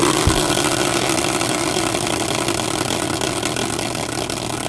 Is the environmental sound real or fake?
real